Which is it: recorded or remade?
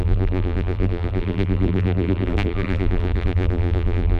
remade